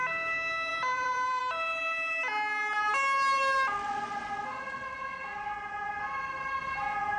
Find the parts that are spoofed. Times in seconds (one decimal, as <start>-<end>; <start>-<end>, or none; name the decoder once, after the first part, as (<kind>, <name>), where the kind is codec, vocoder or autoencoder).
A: 0.7-1.4 (vocoder, BigVGAN v2)